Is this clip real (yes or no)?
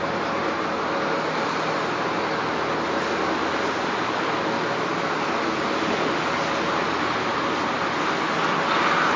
yes